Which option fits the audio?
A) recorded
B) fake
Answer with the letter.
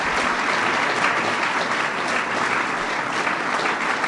A